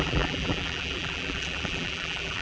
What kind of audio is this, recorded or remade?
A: remade